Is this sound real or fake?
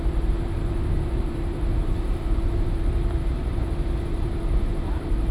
fake